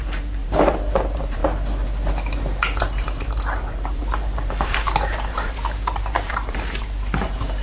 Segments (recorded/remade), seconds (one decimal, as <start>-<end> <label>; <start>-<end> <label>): 0.0-1.4 remade; 1.4-2.8 recorded; 2.8-7.6 remade